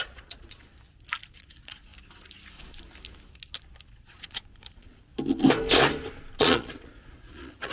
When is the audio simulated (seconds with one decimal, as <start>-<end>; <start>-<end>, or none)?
0.0-0.7; 1.3-1.9; 3.9-5.1; 6.4-7.7

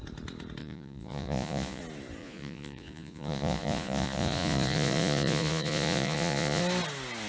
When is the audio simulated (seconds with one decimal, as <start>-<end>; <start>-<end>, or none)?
0.6-1.8; 2.2-6.6

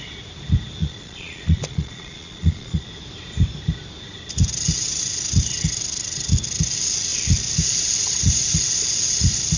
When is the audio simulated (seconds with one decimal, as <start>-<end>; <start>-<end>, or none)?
0.8-2.9

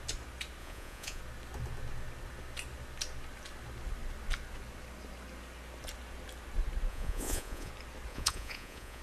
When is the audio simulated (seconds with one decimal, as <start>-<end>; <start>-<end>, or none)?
0.6-1.2; 6.9-7.7; 8.1-9.0

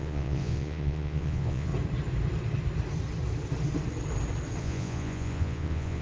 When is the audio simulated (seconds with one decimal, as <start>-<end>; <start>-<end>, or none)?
0.0-1.7; 4.6-6.0